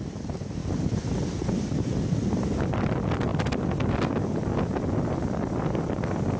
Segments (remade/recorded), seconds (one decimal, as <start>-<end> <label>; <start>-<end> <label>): 0.0-6.4 recorded